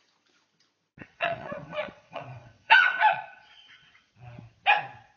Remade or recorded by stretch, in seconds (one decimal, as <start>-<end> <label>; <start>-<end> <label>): 0.0-1.0 recorded; 1.0-4.1 remade; 4.1-5.2 recorded